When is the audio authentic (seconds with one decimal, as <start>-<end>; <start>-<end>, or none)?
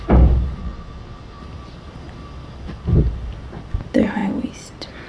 0.0-0.6; 1.4-5.1